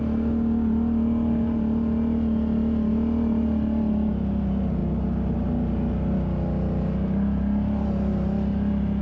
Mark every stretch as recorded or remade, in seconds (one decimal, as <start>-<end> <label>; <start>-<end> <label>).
0.0-9.0 recorded